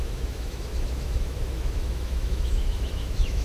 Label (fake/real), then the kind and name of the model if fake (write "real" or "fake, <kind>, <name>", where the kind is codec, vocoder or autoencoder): fake, autoencoder, DAC-VAE